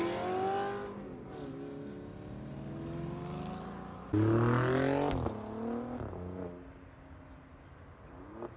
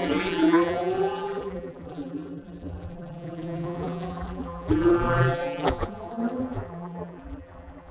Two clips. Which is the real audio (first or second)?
first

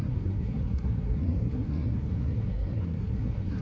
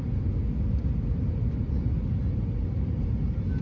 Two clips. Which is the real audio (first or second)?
second